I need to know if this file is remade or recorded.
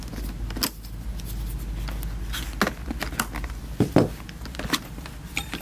recorded